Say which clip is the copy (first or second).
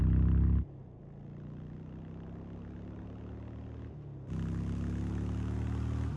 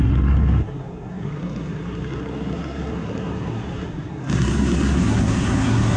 second